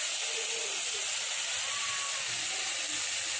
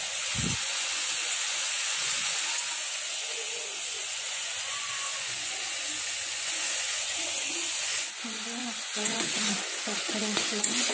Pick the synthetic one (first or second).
second